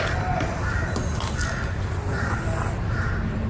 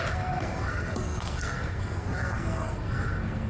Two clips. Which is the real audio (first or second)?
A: first